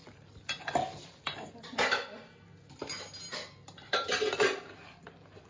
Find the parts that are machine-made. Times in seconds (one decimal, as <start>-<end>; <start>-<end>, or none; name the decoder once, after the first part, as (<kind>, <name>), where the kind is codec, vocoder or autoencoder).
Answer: none